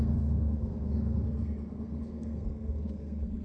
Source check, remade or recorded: remade